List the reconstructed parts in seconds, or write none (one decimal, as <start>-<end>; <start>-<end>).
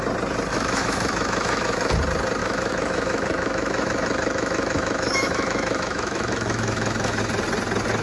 0.5-1.9; 2.4-7.2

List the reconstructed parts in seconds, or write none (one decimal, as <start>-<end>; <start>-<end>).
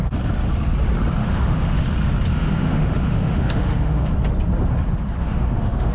1.2-1.8; 2.3-4.1; 5.2-5.9